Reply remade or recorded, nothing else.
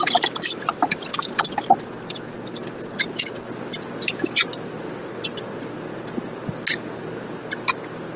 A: recorded